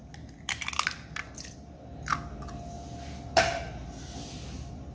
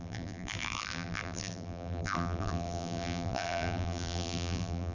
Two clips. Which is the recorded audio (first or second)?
first